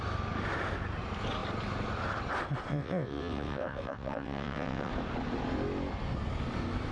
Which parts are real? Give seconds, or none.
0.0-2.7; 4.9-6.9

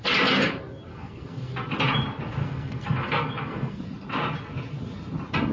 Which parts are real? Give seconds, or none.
0.0-0.9; 1.5-2.4; 3.8-5.5

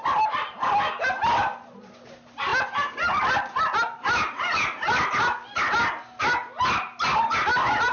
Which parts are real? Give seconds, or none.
0.0-7.9

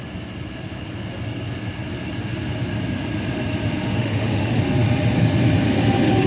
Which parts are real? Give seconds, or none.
0.0-4.0; 4.6-6.3